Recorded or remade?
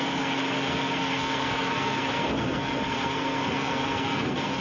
remade